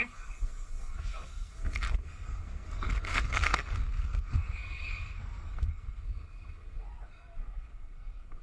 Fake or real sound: fake